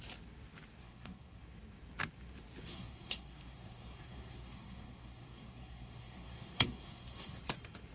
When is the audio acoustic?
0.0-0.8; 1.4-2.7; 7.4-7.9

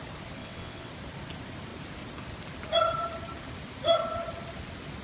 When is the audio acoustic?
0.0-0.4; 0.9-5.0

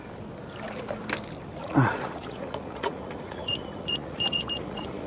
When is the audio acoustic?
0.0-1.6